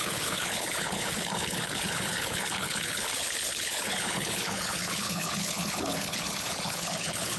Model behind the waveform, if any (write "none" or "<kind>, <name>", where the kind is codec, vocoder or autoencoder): codec, HILCodec